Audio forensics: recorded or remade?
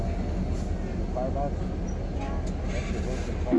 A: recorded